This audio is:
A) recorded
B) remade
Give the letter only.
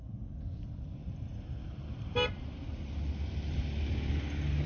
A